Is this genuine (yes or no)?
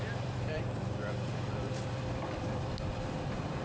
no